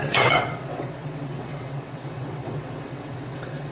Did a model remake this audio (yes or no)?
yes